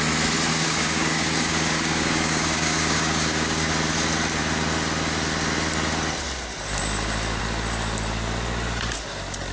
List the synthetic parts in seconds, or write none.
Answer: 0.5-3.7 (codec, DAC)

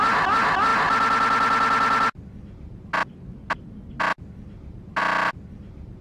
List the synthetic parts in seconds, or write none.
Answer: none

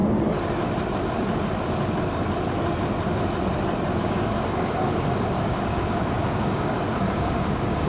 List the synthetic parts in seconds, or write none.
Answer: 4.0-7.9 (codec, DAC)

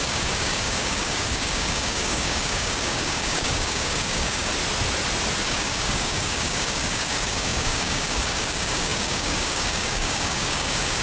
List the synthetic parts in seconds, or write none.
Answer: 0.0-4.5 (codec, DAC); 5.4-11.0

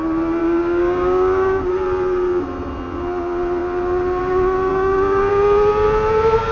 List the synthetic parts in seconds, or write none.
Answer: 0.4-1.6 (codec, DAC); 4.7-5.3

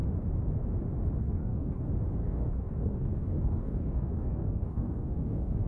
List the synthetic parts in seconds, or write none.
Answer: 1.2-1.8 (codec, DAC); 2.2-5.7

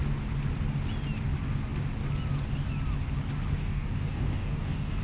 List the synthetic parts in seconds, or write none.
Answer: 3.6-5.0 (codec, DAC)

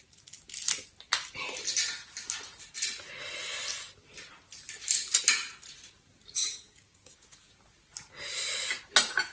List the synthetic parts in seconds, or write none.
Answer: 6.4-7.5 (codec, DAC)